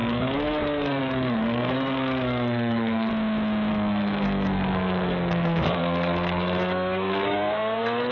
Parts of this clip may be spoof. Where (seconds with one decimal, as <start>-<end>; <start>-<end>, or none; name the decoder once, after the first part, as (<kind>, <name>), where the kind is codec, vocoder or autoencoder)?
0.0-3.1 (codec, SNAC); 3.7-8.1